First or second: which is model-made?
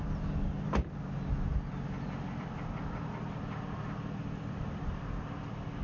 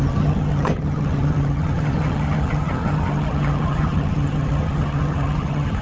second